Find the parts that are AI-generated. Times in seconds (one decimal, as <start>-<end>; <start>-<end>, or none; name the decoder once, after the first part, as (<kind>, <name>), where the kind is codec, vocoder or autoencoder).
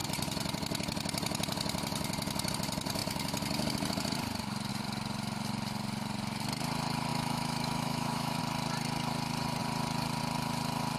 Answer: 7.1-8.4 (autoencoder, DAC-VAE)